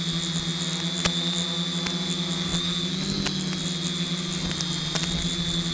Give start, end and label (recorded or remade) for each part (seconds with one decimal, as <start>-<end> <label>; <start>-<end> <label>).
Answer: 0.0-5.7 recorded